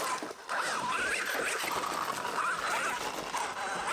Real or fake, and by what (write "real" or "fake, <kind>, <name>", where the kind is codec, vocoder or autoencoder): real